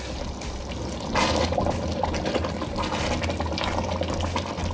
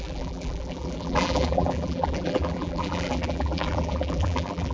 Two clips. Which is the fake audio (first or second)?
second